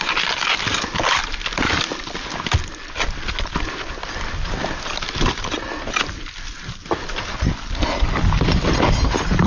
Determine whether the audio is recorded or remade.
recorded